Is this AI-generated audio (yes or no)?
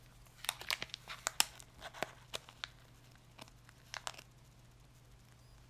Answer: no